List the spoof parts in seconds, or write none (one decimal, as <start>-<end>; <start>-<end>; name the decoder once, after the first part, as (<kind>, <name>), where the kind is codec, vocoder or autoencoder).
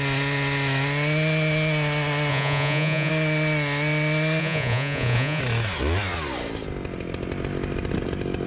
2.3-3.1 (vocoder, Vocos); 4.4-5.4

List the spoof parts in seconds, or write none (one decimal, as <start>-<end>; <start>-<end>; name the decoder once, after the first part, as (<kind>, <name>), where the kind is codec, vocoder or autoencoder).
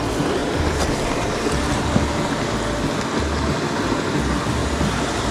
0.4-1.5 (vocoder, BigVGAN v2); 4.6-5.3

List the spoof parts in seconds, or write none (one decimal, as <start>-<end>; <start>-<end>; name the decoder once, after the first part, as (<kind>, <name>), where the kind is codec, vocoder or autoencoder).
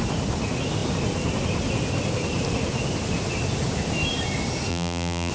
4.7-5.3 (vocoder, BigVGAN v2)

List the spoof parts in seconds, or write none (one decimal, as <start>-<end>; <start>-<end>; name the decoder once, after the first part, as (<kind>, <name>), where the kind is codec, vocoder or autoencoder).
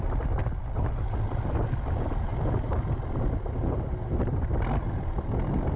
none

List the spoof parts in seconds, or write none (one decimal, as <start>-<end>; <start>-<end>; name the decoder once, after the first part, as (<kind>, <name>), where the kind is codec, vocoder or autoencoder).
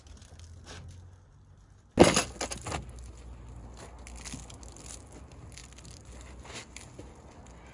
none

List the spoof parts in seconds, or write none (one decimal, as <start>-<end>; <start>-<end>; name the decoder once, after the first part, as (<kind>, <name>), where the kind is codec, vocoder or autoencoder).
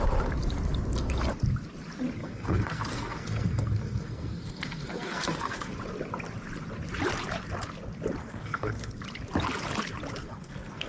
2.2-5.7 (codec, SNAC); 8.2-8.9; 10.2-10.9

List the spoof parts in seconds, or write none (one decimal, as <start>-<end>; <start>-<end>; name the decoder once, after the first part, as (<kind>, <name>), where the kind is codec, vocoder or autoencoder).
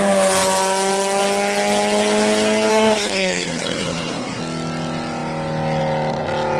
2.7-4.4 (codec, SNAC)